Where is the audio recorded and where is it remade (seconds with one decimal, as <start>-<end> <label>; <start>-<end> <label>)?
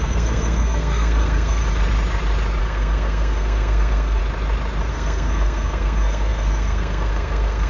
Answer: 0.0-1.6 remade; 1.6-2.6 recorded; 2.6-4.2 remade; 4.2-4.9 recorded; 4.9-7.7 remade